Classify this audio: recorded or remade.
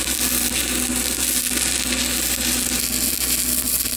recorded